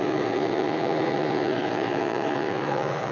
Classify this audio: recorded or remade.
remade